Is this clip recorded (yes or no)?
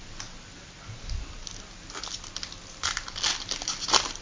yes